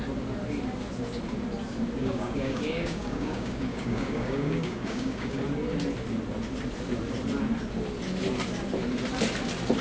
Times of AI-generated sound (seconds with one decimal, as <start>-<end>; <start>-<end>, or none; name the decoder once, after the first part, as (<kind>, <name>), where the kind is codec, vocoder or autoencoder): 2.0-5.4 (codec, DAC)